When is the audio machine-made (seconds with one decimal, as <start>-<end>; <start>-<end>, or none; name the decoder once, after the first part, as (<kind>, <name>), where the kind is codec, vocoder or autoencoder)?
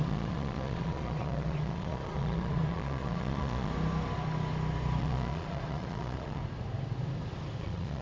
0.0-3.7 (vocoder, Vocos); 5.0-6.4; 7.6-8.0